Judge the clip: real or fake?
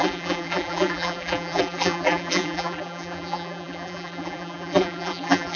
fake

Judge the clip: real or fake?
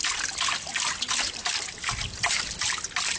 real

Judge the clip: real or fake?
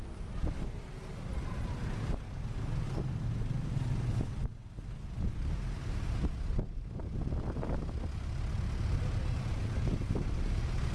real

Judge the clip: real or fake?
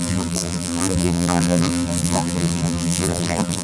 fake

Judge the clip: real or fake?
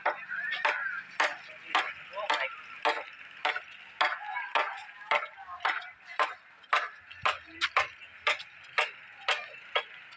real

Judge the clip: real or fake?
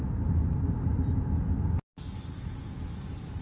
real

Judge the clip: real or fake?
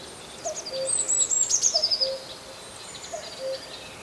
real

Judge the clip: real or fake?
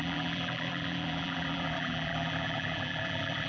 fake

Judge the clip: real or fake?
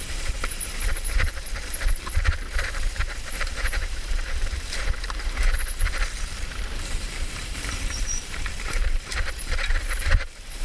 fake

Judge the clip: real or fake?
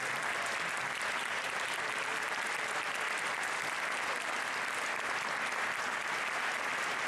real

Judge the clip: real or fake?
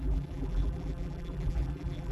fake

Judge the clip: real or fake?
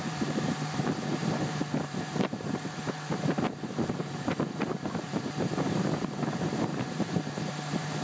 fake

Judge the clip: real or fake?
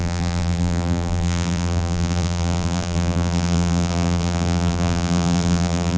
fake